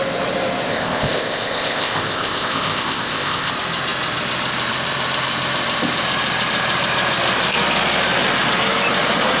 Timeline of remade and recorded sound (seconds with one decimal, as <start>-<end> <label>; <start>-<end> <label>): 0.0-0.7 recorded; 0.7-3.5 remade; 3.5-9.4 recorded